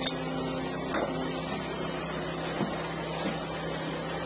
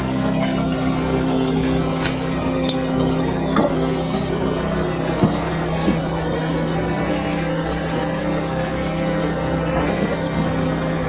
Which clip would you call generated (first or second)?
second